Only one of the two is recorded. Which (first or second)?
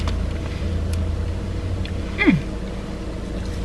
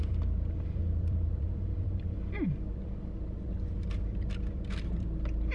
first